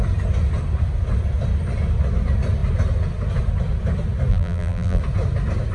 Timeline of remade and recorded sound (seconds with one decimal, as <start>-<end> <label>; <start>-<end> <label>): 0.0-4.3 recorded; 4.3-5.0 remade; 5.0-5.7 recorded